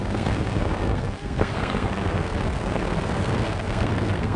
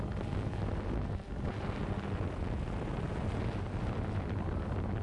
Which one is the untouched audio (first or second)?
second